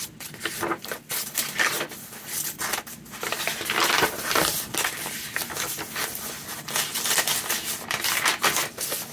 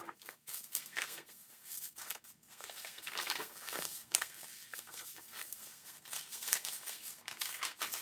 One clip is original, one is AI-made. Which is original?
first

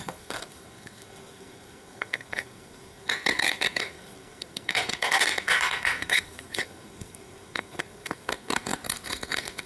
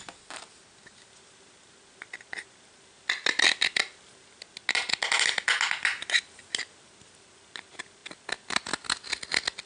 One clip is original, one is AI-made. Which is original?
second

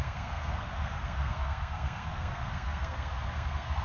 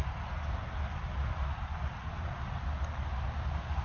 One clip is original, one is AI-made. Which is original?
second